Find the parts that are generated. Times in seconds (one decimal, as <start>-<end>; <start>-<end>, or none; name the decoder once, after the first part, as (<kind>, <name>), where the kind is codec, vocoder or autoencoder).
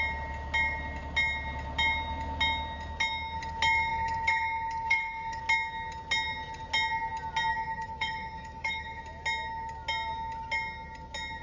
3.9-5.4 (autoencoder, DAC-VAE); 7.5-9.0